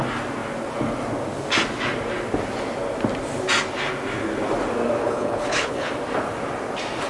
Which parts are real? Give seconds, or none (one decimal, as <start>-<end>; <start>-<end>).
0.0-5.0; 5.9-7.1

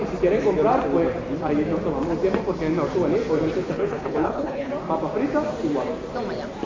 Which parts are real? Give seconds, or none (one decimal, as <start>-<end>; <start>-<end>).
0.0-3.6; 4.7-6.7